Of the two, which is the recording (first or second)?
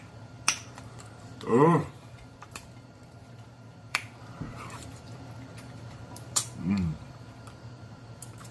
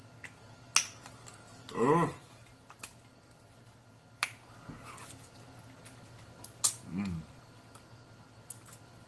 second